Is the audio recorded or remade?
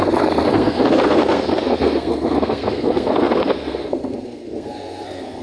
remade